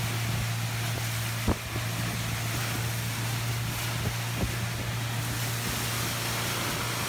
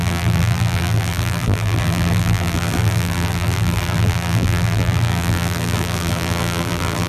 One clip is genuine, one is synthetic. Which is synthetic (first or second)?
second